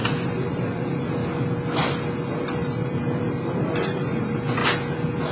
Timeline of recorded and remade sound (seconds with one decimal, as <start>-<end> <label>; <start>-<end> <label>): 0.0-0.5 recorded; 0.5-1.2 remade; 1.2-2.3 recorded; 2.3-4.6 remade; 4.6-5.3 recorded